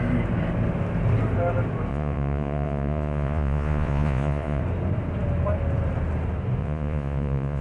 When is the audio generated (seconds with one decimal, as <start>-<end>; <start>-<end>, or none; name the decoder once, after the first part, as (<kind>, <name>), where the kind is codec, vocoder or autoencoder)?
1.9-4.6 (vocoder, Vocos); 6.6-7.6